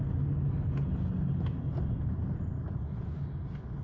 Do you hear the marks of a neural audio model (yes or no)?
no